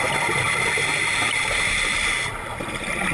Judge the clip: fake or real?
real